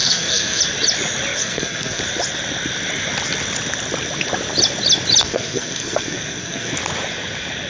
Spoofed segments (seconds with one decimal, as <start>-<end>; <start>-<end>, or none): 0.0-0.6; 1.4-2.0; 5.2-6.7